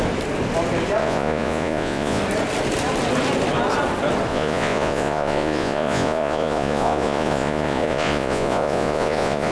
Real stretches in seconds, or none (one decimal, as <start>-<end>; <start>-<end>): 0.0-1.0; 2.2-4.3